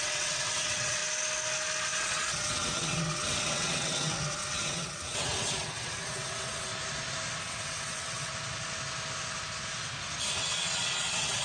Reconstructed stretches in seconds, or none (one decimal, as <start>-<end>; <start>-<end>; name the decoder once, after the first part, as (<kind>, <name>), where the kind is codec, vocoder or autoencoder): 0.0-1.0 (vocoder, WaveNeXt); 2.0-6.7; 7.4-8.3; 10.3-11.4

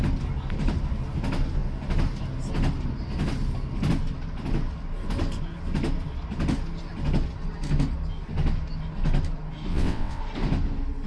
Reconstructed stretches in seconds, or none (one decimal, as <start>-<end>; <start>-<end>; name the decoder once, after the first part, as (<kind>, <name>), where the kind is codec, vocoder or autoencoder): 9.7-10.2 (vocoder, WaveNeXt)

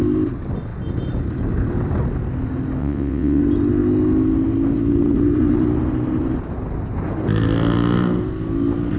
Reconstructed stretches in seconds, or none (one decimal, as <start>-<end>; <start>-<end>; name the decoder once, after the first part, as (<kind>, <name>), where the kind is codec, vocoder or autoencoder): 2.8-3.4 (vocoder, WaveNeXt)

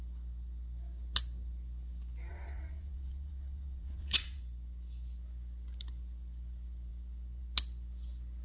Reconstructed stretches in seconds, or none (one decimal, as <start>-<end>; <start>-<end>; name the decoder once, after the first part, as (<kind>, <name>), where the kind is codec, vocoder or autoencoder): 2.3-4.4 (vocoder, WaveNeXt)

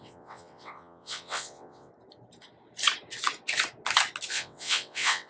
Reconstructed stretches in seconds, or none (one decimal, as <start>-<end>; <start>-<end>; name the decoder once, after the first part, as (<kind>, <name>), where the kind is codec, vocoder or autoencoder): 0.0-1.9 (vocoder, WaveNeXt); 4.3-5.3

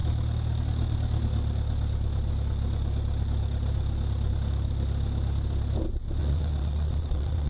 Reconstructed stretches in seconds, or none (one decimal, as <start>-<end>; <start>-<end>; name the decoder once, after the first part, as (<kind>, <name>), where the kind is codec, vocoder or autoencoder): 6.2-7.5 (vocoder, WaveNeXt)

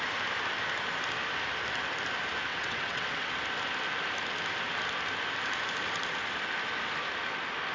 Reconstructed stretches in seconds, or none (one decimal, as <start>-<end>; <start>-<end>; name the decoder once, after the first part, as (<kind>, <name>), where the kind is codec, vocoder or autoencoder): 2.5-3.3 (vocoder, WaveNeXt)

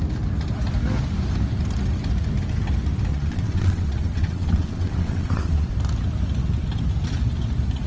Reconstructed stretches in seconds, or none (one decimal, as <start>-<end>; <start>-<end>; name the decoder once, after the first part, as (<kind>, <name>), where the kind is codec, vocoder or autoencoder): 3.1-5.7 (vocoder, WaveNeXt)